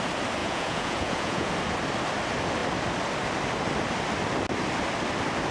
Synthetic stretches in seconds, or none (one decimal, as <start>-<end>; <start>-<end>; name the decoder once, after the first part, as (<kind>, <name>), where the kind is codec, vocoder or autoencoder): 0.4-1.5 (vocoder, Vocos)